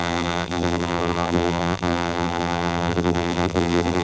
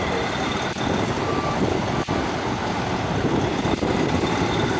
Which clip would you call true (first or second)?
second